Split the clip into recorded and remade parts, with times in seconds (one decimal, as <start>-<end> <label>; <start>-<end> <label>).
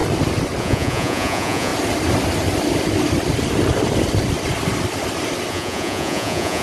0.0-0.6 recorded; 0.6-1.7 remade; 1.7-5.5 recorded; 5.5-6.6 remade